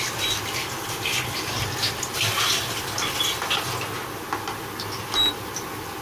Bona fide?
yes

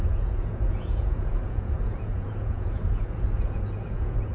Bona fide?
no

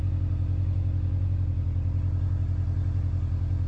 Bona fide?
yes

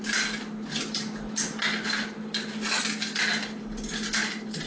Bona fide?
yes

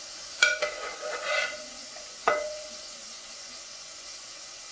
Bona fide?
no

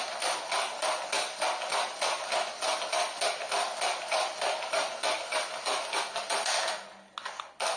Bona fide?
yes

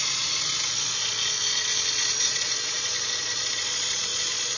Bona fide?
no